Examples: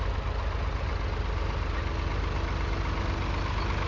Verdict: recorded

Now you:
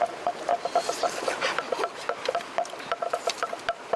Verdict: recorded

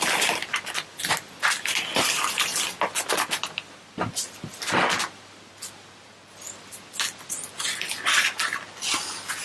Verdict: recorded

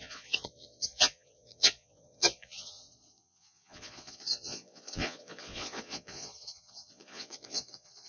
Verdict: remade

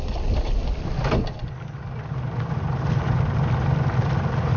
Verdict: recorded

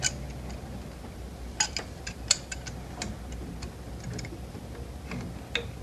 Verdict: recorded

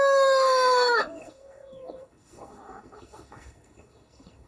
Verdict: remade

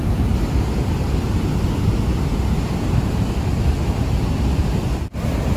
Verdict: recorded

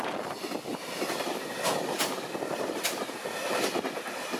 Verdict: recorded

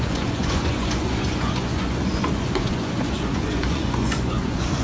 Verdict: remade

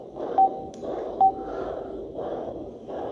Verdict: remade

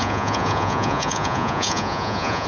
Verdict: remade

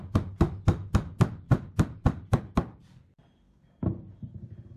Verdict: recorded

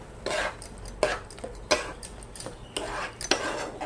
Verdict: recorded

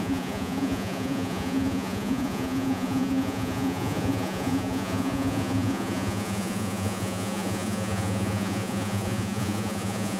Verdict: remade